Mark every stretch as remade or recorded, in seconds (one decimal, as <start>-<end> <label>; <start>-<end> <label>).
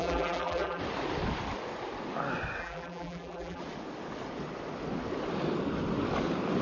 0.0-0.8 remade; 0.8-2.6 recorded; 2.6-3.6 remade; 3.6-6.6 recorded